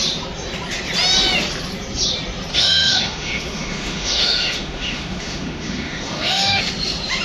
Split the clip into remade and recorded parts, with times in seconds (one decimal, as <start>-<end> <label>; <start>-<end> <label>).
0.0-2.5 recorded; 2.5-6.6 remade; 6.6-7.2 recorded

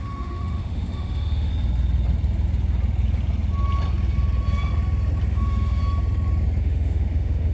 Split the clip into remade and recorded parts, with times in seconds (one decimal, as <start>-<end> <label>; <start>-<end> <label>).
0.0-1.5 remade; 1.5-5.3 recorded; 5.3-5.8 remade; 5.8-6.6 recorded; 6.6-7.5 remade